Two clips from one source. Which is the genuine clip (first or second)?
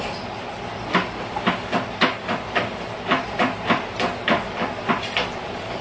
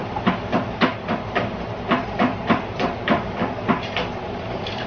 first